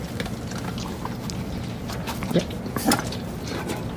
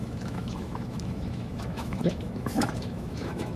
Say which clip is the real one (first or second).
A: first